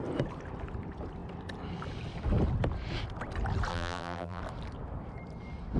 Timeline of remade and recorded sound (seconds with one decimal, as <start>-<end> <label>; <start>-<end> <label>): 0.0-3.7 recorded; 3.7-4.4 remade; 4.4-5.8 recorded